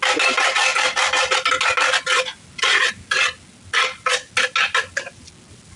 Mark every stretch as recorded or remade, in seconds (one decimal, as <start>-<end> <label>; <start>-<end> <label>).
0.0-5.8 recorded

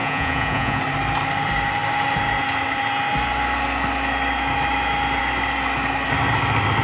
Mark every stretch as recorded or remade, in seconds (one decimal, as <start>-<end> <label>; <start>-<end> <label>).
0.0-0.8 remade; 0.8-6.8 recorded

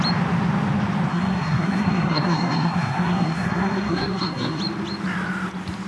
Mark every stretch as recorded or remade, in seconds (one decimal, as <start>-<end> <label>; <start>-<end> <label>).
0.0-1.1 recorded; 1.1-4.6 remade; 4.6-5.9 recorded

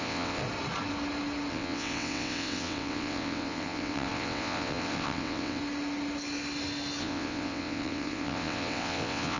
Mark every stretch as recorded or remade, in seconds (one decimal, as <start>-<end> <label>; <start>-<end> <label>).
0.0-0.4 remade; 0.4-1.5 recorded; 1.5-5.6 remade; 5.6-7.0 recorded; 7.0-9.4 remade

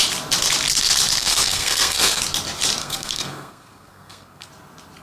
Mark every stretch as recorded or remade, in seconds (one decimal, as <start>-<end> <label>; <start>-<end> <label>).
0.0-1.2 recorded; 1.2-2.2 remade; 2.2-2.8 recorded; 2.8-4.5 remade; 4.5-5.0 recorded

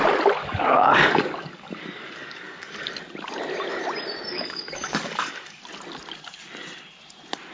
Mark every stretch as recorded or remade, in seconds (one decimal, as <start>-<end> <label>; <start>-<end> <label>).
0.0-0.4 recorded; 0.4-2.9 remade; 2.9-4.3 recorded; 4.3-5.6 remade; 5.6-7.5 recorded

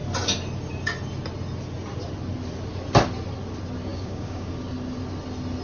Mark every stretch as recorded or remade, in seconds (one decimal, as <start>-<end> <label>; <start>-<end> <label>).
0.0-3.9 recorded; 3.9-4.5 remade; 4.5-5.6 recorded

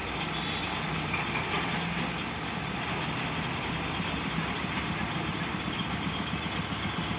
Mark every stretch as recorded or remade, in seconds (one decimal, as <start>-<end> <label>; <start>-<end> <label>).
0.0-7.2 recorded